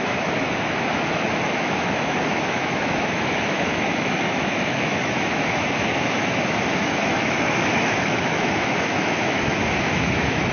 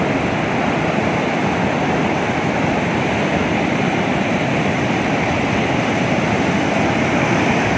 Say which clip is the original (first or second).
second